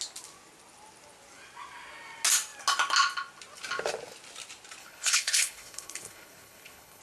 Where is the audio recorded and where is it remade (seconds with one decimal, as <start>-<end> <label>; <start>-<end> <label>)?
0.0-4.8 recorded; 4.8-7.0 remade